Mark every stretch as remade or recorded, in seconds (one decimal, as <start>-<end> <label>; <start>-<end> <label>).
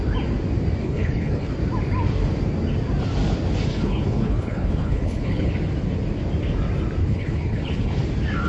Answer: 0.0-0.8 recorded; 0.8-1.5 remade; 1.5-3.7 recorded; 3.7-5.5 remade; 5.5-7.0 recorded; 7.0-8.0 remade; 8.0-8.5 recorded